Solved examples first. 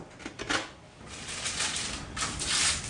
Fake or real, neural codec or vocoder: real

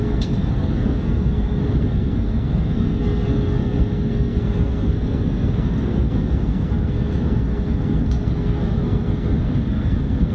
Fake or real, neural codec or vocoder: fake, codec, SNAC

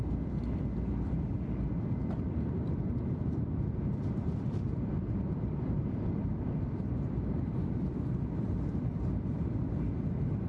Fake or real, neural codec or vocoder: fake, vocoder, BigVGAN v2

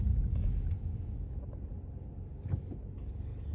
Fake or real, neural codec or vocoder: real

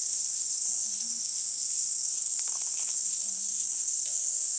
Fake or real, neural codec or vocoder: fake, codec, SNAC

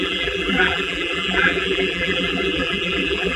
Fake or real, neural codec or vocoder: fake, vocoder, BigVGAN v2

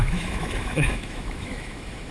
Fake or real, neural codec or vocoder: fake, autoencoder, DAC-VAE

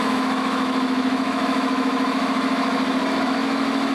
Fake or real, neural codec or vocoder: fake, autoencoder, DAC-VAE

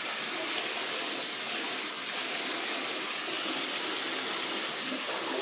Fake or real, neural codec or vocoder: real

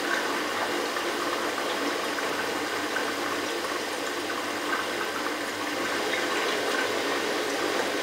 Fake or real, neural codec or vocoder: real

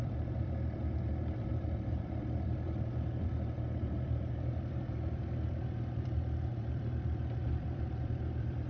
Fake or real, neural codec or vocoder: fake, vocoder, BigVGAN v2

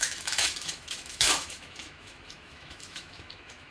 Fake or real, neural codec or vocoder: fake, autoencoder, DAC-VAE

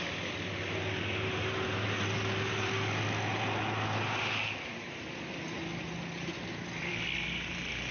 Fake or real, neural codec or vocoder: real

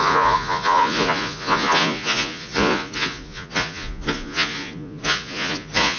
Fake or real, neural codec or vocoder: fake, vocoder, Vocos